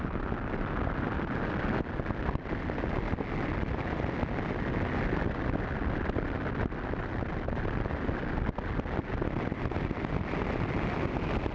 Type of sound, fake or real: real